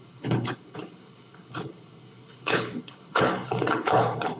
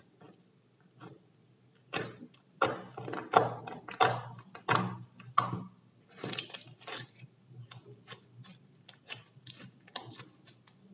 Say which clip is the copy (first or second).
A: first